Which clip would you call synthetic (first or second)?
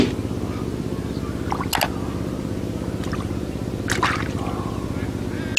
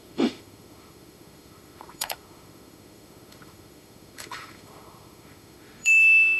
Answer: second